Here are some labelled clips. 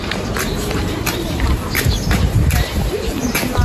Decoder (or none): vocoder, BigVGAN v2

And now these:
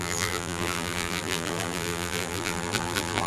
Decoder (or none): vocoder, BigVGAN v2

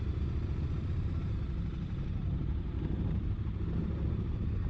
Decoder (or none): vocoder, BigVGAN v2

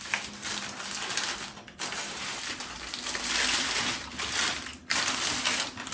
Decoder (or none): vocoder, BigVGAN v2